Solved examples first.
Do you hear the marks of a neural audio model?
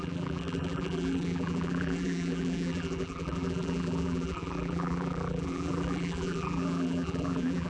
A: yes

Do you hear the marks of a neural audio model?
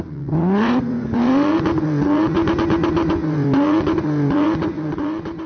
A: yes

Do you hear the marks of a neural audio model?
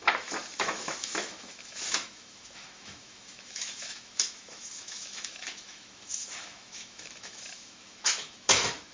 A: yes